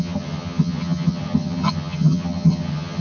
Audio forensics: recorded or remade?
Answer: remade